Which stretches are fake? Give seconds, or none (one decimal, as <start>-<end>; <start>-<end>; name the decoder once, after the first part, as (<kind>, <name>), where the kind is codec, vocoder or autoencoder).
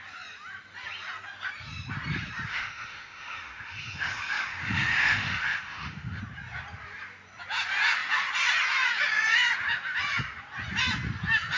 2.5-6.2 (autoencoder, DAC-VAE)